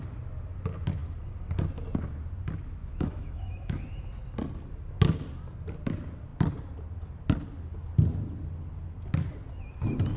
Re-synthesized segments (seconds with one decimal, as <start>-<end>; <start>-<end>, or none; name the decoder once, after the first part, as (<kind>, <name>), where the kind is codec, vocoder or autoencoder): 2.8-3.8 (autoencoder, DAC-VAE)